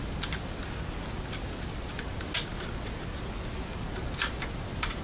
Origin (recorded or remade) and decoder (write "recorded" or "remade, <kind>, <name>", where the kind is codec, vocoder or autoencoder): recorded